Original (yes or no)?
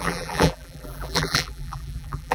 no